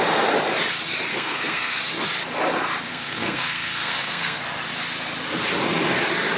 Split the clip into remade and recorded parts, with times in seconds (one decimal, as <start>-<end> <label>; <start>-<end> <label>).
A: 0.0-1.1 recorded; 1.1-1.8 remade; 1.8-2.9 recorded; 2.9-4.4 remade; 4.4-6.4 recorded